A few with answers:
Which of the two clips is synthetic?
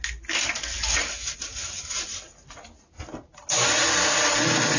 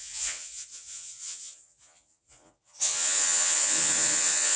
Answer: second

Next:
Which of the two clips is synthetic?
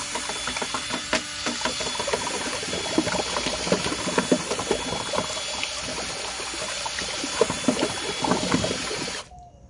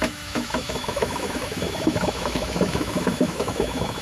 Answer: second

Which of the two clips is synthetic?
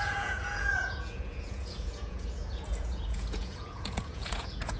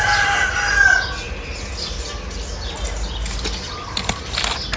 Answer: first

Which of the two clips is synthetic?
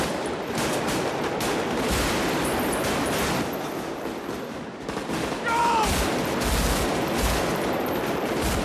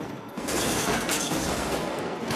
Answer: second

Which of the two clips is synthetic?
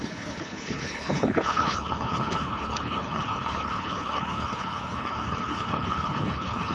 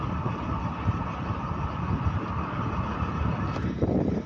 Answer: first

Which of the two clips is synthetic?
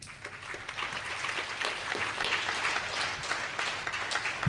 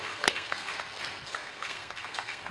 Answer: second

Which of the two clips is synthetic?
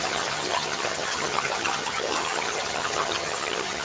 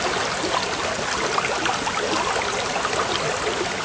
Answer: first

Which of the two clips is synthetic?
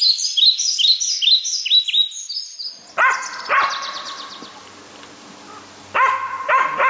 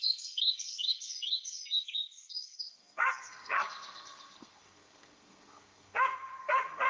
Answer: second